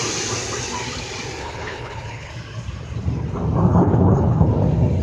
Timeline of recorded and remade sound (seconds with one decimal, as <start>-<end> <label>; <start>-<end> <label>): 0.0-1.4 recorded; 1.4-2.3 remade; 2.3-3.7 recorded; 3.7-4.5 remade; 4.5-5.0 recorded